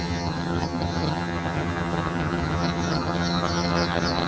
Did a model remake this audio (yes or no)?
yes